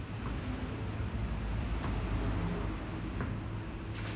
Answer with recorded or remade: recorded